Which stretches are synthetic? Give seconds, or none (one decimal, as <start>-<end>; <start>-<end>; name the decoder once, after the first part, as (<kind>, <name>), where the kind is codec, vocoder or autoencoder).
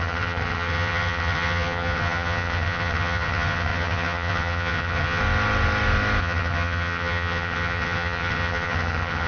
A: 0.0-5.2 (vocoder, HiFi-GAN); 6.2-9.3